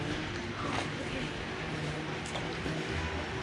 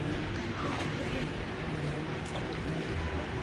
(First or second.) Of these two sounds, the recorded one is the first